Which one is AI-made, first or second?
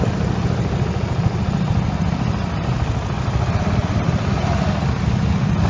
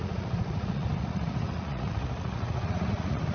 second